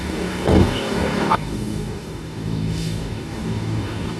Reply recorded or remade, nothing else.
remade